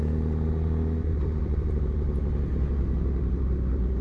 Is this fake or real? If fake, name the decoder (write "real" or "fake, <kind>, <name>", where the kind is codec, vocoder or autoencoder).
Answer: real